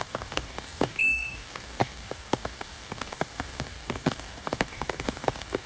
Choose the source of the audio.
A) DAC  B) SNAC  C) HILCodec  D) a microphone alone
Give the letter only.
A